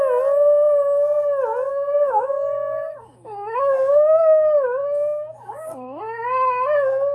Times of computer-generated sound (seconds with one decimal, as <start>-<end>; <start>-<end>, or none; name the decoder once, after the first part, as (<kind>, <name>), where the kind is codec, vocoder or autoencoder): 1.7-6.0 (codec, DAC)